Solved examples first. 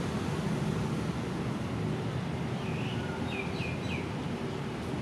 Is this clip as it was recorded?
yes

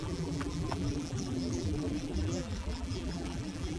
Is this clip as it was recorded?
no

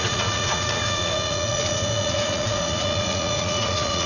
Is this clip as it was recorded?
no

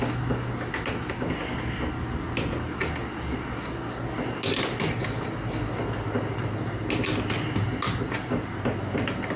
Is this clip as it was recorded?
yes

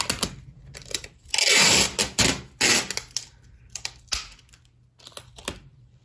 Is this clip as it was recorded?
yes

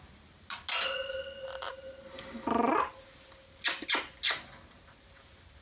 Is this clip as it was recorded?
yes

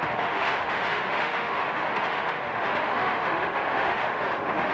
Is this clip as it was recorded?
no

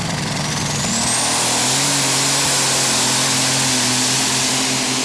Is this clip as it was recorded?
yes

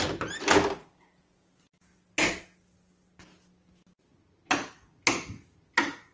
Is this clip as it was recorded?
yes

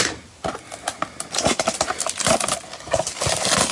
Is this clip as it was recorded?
yes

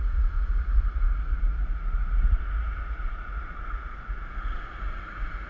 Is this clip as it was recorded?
no